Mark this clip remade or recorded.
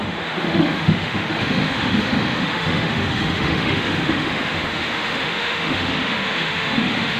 remade